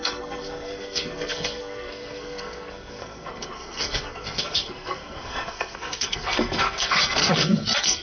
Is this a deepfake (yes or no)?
yes